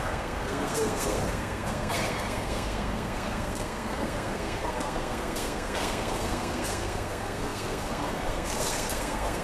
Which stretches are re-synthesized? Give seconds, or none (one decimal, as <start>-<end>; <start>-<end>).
0.0-9.4